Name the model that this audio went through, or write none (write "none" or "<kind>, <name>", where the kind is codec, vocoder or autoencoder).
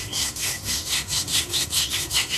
codec, SNAC